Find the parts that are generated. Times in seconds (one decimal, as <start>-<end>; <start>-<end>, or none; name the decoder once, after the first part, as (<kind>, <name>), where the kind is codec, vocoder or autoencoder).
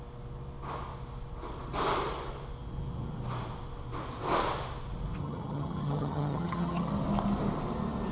5.2-6.9 (vocoder, HiFi-GAN)